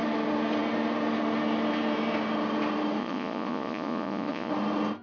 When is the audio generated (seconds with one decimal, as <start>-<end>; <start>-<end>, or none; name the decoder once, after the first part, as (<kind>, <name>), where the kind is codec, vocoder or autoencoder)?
3.0-4.5 (vocoder, Vocos)